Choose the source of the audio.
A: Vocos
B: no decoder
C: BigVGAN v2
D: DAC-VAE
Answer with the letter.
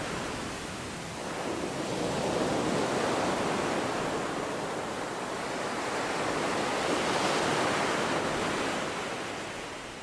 B